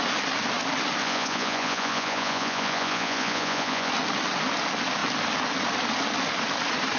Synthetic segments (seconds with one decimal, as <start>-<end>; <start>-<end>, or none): 1.0-3.9